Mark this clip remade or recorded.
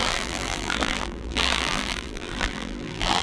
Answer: remade